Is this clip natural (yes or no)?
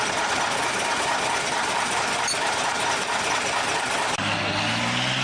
yes